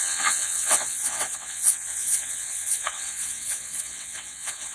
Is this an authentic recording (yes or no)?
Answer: no